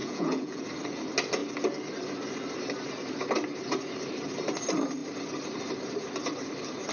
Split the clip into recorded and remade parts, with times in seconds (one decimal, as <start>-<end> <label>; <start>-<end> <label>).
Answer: 0.0-0.6 remade; 0.6-6.9 recorded

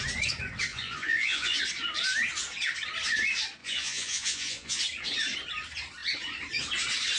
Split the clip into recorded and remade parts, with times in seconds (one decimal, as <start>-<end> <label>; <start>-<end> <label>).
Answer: 0.0-0.7 recorded; 0.7-1.6 remade; 1.6-3.6 recorded; 3.6-4.8 remade; 4.8-7.2 recorded

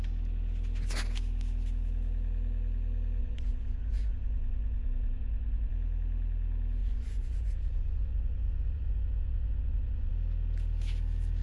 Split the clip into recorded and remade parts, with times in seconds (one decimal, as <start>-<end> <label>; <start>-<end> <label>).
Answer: 0.0-3.2 recorded; 3.2-5.7 remade; 5.7-6.8 recorded; 6.8-10.1 remade; 10.1-11.4 recorded

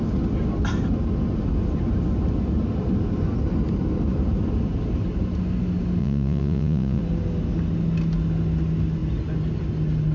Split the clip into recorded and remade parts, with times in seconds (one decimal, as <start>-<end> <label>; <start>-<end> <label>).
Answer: 0.0-6.0 recorded; 6.0-7.0 remade; 7.0-10.1 recorded

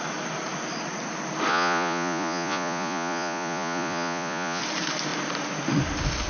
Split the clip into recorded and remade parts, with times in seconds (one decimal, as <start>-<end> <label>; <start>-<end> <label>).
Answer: 0.0-1.5 recorded; 1.5-4.6 remade; 4.6-6.3 recorded

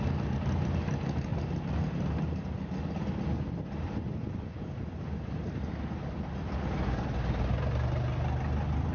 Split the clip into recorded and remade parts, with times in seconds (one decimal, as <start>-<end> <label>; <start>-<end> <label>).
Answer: 0.0-8.9 recorded

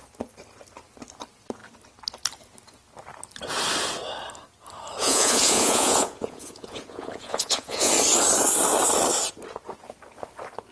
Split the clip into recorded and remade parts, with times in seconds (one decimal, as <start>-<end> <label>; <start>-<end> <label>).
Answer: 0.0-5.0 recorded; 5.0-7.9 remade; 7.9-10.7 recorded

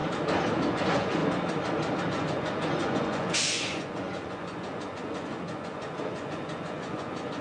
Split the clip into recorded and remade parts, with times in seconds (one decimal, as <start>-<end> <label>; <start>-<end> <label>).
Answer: 0.0-0.7 recorded; 0.7-1.2 remade; 1.2-2.1 recorded; 2.1-7.4 remade